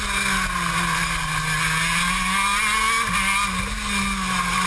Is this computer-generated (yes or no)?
no